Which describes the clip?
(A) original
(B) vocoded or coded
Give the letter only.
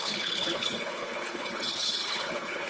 B